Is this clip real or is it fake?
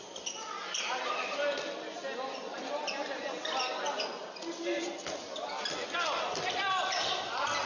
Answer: real